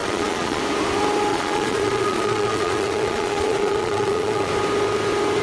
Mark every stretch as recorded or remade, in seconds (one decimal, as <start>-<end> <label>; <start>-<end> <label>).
0.0-0.6 remade; 0.6-1.3 recorded; 1.3-4.5 remade; 4.5-5.4 recorded